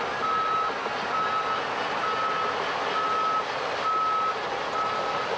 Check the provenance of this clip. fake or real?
real